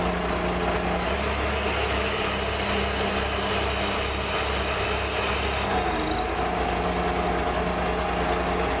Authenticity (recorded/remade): recorded